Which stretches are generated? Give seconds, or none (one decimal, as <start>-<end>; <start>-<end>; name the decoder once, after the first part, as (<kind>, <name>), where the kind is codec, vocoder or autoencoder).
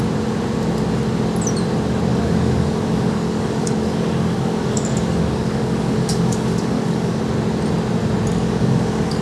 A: 2.1-7.2 (codec, DAC); 8.3-9.2